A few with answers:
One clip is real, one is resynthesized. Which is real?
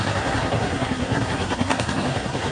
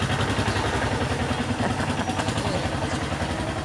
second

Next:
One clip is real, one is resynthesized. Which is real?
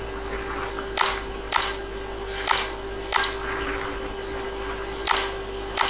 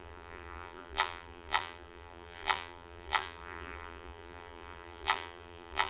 first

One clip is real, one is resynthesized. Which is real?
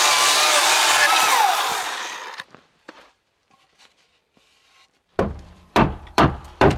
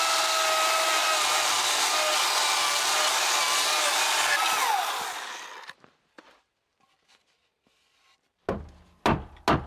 second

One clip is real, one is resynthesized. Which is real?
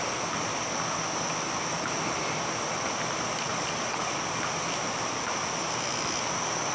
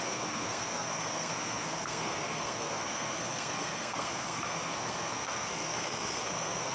first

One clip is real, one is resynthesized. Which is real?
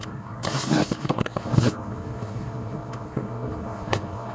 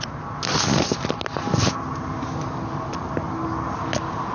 second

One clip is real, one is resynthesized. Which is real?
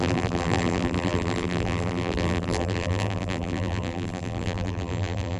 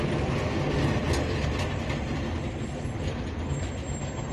second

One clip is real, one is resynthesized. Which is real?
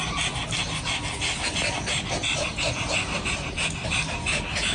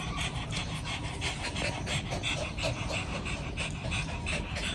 first